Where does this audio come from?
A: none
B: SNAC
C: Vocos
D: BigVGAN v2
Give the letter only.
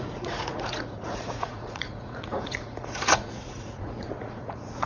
C